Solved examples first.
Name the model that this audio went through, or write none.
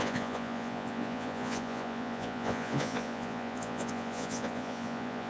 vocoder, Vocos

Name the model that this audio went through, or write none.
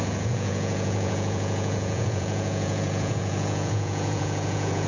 vocoder, Vocos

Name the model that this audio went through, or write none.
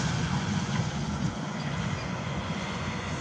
vocoder, Vocos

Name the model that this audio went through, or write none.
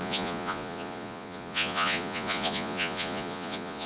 vocoder, Vocos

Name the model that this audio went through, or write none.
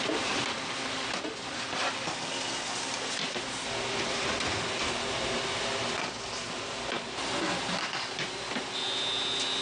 none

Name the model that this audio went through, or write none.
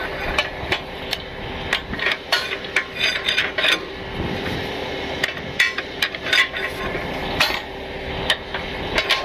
none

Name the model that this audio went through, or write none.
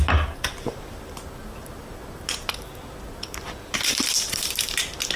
none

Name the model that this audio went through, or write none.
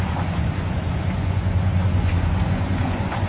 vocoder, Vocos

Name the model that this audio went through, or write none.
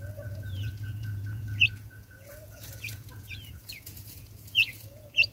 vocoder, Vocos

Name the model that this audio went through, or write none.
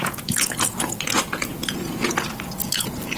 vocoder, Vocos